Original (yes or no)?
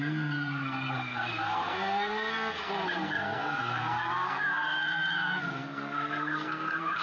no